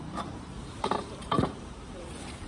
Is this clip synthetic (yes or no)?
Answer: yes